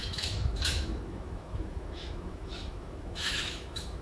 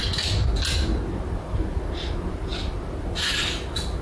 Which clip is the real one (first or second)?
second